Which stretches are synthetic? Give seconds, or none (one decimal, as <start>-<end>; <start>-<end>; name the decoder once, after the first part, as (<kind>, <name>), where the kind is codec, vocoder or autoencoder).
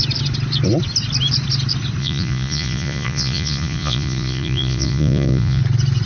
2.0-5.6 (vocoder, Vocos)